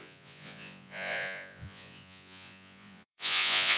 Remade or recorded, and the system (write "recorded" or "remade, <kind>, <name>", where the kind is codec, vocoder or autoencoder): remade, vocoder, Vocos